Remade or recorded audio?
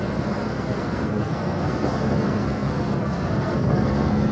remade